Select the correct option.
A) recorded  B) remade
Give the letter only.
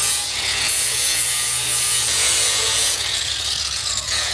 B